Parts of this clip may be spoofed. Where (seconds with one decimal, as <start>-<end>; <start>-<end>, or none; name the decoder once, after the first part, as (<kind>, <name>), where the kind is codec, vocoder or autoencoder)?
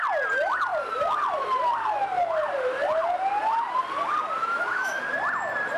4.4-5.0 (autoencoder, DAC-VAE)